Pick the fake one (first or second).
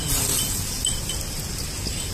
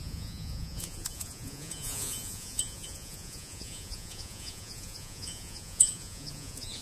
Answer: second